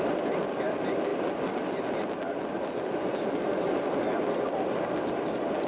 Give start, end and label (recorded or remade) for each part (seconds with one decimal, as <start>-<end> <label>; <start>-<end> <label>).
0.0-5.7 recorded